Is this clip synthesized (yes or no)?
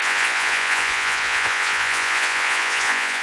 yes